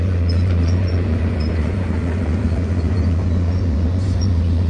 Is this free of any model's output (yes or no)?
no